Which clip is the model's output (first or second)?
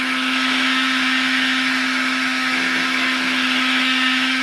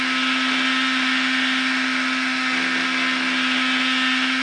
first